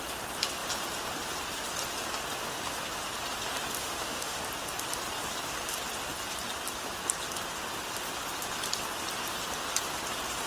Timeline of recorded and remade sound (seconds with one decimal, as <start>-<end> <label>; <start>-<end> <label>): 0.0-3.8 recorded; 3.8-4.4 remade; 4.4-10.5 recorded